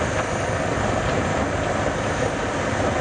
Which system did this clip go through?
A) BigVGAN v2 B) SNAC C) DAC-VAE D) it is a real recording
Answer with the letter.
D